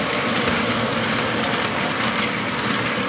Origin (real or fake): real